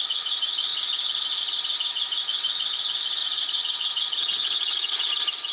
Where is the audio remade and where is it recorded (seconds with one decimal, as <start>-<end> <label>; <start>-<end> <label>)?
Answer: 0.0-3.2 recorded; 3.2-5.1 remade; 5.1-5.5 recorded